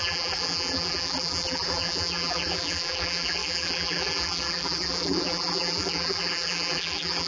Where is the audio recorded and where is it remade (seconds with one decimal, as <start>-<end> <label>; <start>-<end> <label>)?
0.0-7.3 remade